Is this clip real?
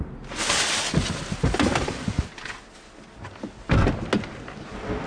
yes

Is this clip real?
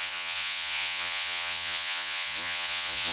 no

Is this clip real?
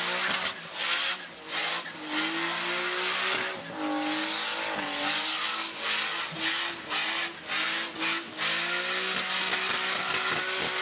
yes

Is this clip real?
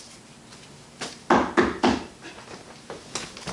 yes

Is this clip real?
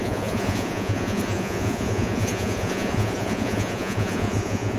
no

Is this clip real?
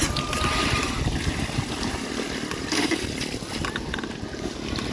yes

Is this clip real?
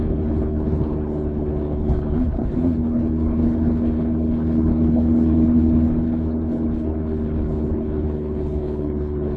no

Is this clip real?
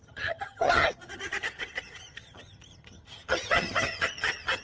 no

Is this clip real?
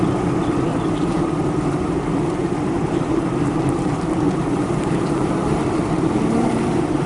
no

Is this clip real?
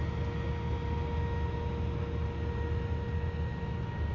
yes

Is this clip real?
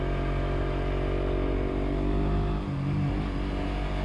yes